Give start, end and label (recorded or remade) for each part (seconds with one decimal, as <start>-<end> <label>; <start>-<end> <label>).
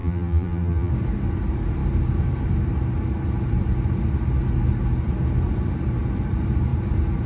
0.0-0.9 remade; 0.9-7.3 recorded